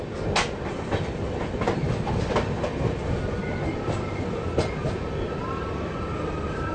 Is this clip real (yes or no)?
yes